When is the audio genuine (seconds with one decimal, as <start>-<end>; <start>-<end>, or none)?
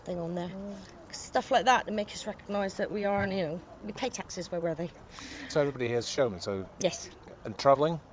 0.5-2.9